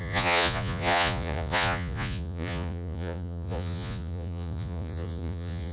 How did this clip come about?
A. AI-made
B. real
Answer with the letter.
A